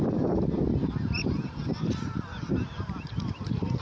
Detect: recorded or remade remade